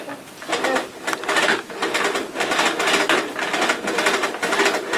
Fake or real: real